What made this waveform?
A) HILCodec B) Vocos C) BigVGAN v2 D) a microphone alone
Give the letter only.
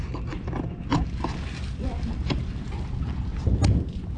D